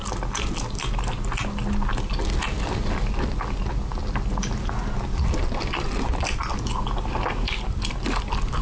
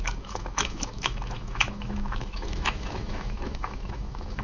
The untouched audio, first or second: first